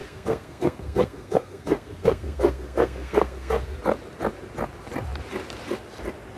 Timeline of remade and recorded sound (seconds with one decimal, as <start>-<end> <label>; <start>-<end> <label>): 0.0-3.8 remade; 3.8-6.4 recorded